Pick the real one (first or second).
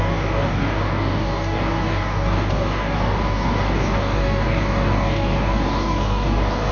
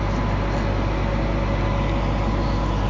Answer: second